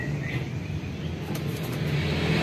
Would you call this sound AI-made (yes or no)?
no